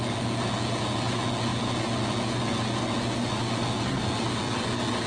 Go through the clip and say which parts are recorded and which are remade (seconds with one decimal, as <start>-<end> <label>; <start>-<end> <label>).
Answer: 0.0-5.1 recorded